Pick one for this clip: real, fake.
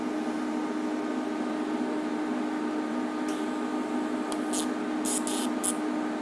real